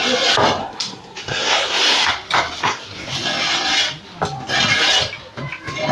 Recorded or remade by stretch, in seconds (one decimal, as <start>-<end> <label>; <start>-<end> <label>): 0.0-0.6 recorded; 0.6-2.1 remade; 2.1-2.6 recorded; 2.6-3.1 remade; 3.1-5.9 recorded